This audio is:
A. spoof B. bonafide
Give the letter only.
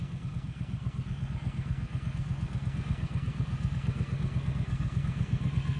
A